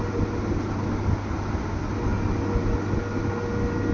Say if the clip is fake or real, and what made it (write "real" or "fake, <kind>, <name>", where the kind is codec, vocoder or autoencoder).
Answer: real